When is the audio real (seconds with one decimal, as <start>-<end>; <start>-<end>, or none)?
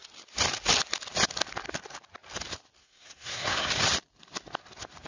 0.0-2.8; 3.7-5.1